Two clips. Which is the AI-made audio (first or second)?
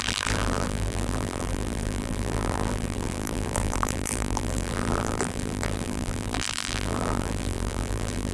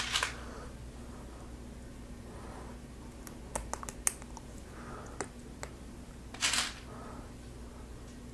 first